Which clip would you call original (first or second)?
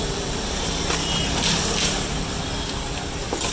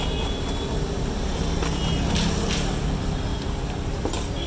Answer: second